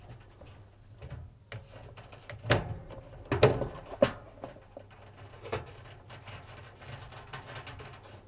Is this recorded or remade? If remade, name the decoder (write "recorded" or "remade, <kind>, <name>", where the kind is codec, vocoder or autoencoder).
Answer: recorded